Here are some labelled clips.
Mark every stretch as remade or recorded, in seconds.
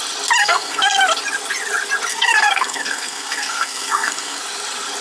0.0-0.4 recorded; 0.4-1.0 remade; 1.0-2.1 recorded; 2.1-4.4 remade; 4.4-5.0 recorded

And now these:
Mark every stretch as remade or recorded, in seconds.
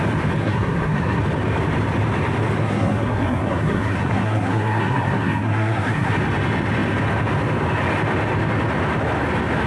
0.0-0.4 recorded; 0.4-1.2 remade; 1.2-2.6 recorded; 2.6-6.1 remade; 6.1-9.7 recorded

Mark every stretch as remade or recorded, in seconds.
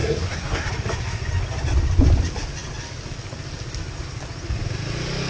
0.0-0.7 remade; 0.7-5.3 recorded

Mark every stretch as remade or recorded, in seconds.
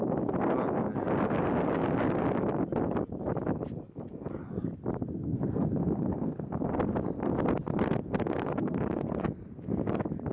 0.0-5.2 recorded; 5.2-6.5 remade; 6.5-8.3 recorded; 8.3-9.2 remade; 9.2-10.3 recorded